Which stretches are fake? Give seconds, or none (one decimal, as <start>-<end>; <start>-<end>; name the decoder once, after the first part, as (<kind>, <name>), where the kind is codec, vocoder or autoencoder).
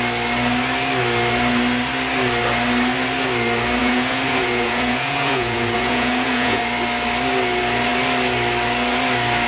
3.8-6.6 (vocoder, Vocos)